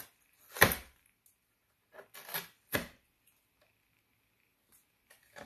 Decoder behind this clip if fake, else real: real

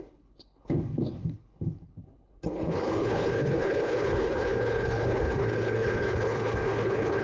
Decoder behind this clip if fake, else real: fake, codec, HILCodec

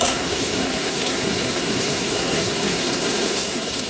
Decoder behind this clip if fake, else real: fake, codec, SNAC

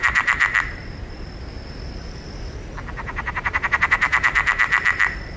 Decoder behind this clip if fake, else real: fake, vocoder, BigVGAN v2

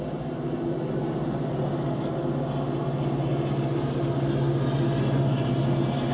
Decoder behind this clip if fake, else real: real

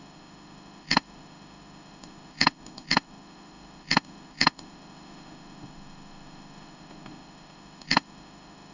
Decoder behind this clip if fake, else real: fake, autoencoder, DAC-VAE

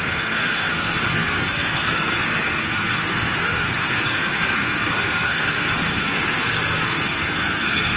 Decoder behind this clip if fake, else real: fake, codec, SNAC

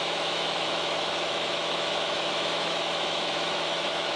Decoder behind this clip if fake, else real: fake, autoencoder, DAC-VAE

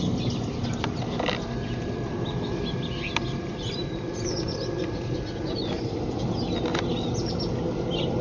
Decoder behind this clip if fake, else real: real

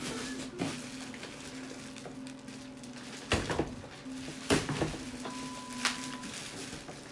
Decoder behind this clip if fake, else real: real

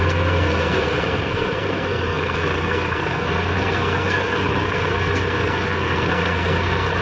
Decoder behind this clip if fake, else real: fake, codec, SNAC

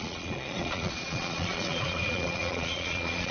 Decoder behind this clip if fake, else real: fake, vocoder, Vocos